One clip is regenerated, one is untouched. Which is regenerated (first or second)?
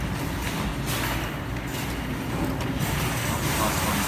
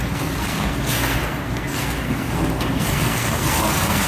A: second